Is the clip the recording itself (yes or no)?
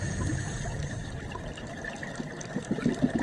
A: yes